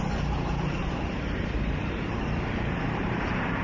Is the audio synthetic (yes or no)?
yes